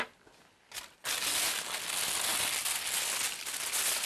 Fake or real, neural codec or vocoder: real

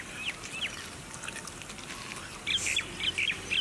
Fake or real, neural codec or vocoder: real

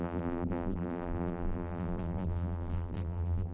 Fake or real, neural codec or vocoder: fake, vocoder, BigVGAN v2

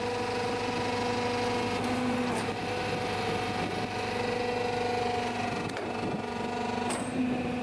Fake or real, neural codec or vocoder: real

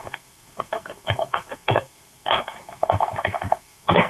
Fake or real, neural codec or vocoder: fake, codec, SNAC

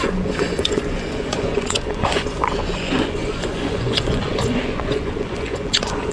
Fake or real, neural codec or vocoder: fake, vocoder, Vocos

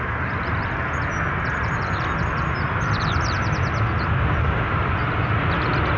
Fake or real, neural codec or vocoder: real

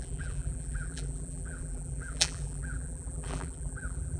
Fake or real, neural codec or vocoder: fake, vocoder, BigVGAN v2